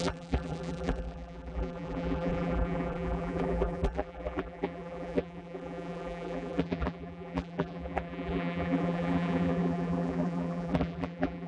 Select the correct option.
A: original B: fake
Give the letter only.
B